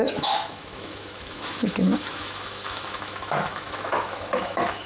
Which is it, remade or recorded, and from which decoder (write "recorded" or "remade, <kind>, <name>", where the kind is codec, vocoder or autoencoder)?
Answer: remade, autoencoder, DAC-VAE